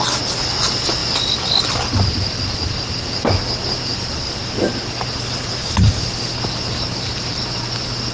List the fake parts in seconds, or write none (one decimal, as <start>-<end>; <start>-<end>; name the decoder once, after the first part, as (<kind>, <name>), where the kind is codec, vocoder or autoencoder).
3.9-4.4 (vocoder, BigVGAN v2); 5.6-7.1